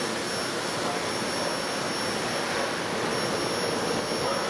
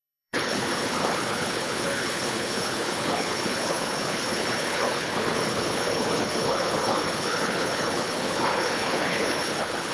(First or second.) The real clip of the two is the first